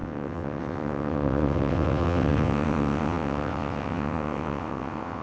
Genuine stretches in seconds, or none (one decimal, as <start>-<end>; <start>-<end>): none